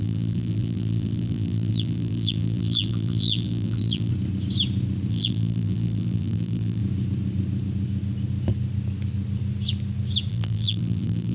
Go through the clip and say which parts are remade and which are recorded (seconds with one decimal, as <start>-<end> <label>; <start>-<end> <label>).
0.0-4.1 remade; 4.1-5.1 recorded; 5.1-6.8 remade; 6.8-10.3 recorded; 10.3-11.3 remade